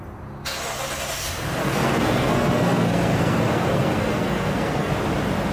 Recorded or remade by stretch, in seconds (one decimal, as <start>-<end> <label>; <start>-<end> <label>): 0.0-1.6 recorded; 1.6-4.9 remade; 4.9-5.5 recorded